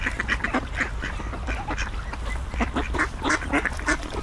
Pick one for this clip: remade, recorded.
recorded